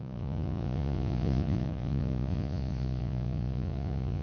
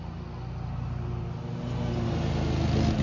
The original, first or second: second